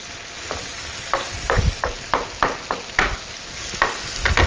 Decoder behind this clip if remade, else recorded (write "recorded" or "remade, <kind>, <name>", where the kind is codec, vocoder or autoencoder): recorded